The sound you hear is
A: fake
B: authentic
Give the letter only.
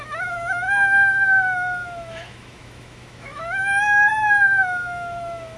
A